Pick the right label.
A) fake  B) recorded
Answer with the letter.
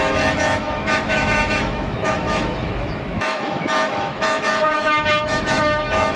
A